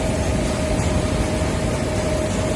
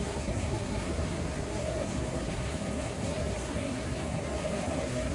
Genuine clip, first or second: first